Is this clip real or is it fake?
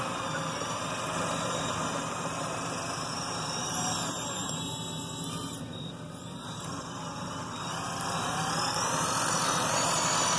real